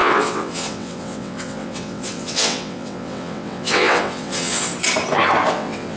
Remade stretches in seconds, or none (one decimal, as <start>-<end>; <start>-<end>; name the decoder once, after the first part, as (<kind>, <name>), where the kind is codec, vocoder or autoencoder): 0.0-4.7 (vocoder, WaveNeXt); 5.5-6.0